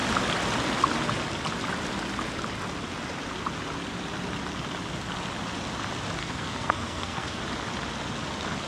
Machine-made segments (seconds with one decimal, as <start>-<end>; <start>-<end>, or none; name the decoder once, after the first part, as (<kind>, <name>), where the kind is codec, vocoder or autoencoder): 6.2-7.4 (codec, SNAC)